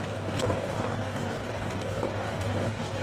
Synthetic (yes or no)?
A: yes